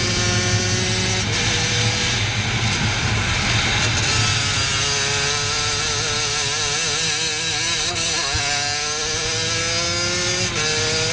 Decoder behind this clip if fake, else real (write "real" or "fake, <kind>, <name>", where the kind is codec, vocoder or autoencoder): real